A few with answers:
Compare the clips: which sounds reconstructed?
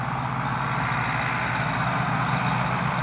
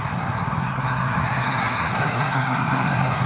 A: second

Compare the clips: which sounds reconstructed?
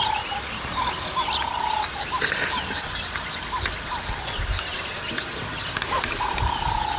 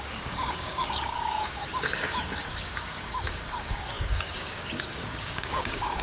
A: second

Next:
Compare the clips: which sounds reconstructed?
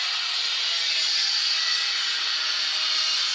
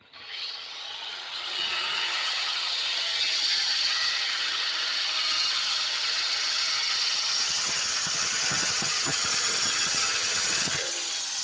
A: second